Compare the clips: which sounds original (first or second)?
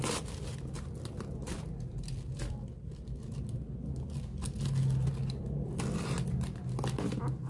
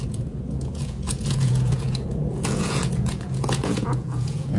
first